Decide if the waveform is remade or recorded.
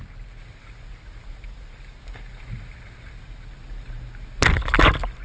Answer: recorded